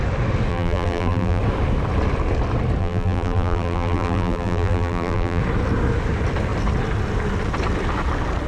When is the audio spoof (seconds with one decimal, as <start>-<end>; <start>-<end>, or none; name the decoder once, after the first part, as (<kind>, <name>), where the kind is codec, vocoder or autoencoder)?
0.5-1.4 (vocoder, BigVGAN v2); 2.8-5.4